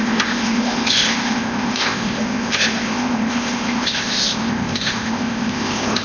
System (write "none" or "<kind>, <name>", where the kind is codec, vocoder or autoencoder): codec, ZipCodec